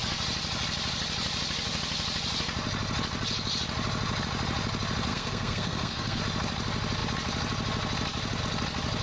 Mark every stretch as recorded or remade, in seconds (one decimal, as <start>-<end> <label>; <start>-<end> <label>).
0.0-5.1 recorded; 5.1-6.2 remade; 6.2-9.0 recorded